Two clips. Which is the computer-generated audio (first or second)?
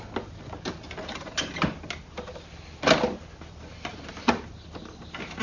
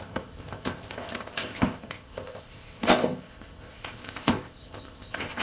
second